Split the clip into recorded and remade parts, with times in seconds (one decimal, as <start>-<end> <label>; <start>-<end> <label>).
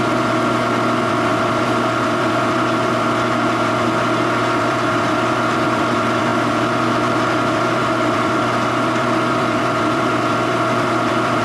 0.0-11.4 remade